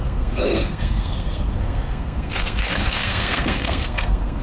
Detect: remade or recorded remade